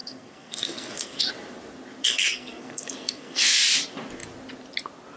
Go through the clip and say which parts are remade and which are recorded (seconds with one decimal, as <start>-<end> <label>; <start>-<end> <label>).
0.0-1.3 remade; 1.3-2.0 recorded; 2.0-3.6 remade; 3.6-5.2 recorded

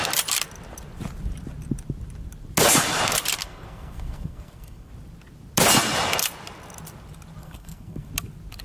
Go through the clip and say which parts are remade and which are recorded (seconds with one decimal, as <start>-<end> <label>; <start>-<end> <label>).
0.0-3.4 recorded; 3.4-4.9 remade; 4.9-7.4 recorded; 7.4-8.1 remade; 8.1-8.6 recorded

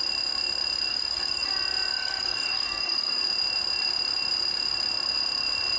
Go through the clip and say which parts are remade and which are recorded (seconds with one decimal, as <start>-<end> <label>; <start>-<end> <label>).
0.0-0.9 recorded; 0.9-1.5 remade; 1.5-1.9 recorded; 1.9-3.2 remade; 3.2-5.8 recorded